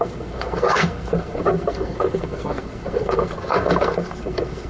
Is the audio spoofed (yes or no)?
yes